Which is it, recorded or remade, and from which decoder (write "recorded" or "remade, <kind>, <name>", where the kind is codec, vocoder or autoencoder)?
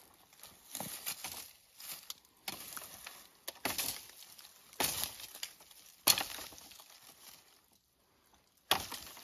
recorded